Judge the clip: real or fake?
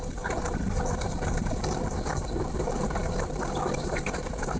fake